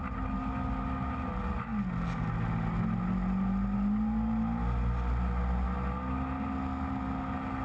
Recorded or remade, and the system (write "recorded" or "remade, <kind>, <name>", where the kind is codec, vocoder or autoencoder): recorded